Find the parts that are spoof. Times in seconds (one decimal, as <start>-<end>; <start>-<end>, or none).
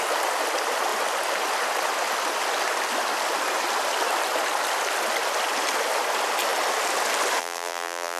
7.4-8.2